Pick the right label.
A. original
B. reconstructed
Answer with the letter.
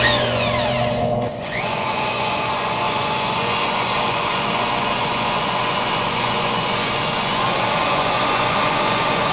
B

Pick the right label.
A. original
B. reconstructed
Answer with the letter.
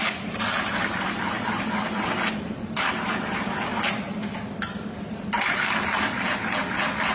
A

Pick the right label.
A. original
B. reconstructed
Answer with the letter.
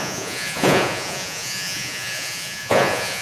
B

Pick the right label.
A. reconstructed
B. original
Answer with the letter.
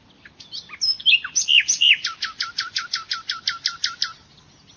B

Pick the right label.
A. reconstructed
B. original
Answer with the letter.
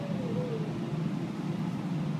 B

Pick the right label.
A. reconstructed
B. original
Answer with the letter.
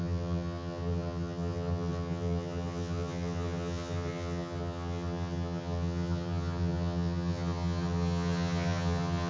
A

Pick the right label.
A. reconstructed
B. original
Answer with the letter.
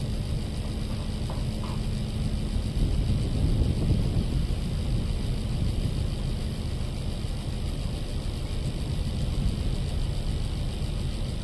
B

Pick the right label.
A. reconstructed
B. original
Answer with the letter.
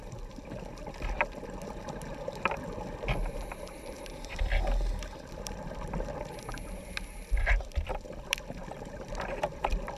A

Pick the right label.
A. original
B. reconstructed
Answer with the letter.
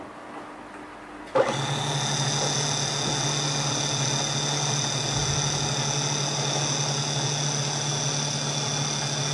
A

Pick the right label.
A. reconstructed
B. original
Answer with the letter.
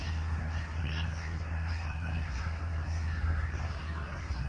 A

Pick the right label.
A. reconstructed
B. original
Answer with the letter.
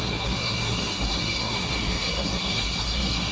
A